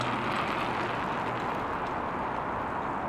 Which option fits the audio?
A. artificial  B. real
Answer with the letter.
B